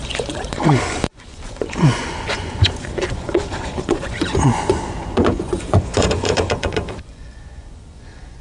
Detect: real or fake fake